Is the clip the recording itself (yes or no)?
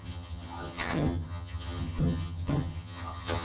no